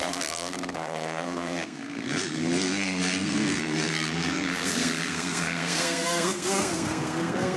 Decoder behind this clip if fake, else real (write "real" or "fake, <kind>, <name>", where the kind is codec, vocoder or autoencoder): fake, codec, SNAC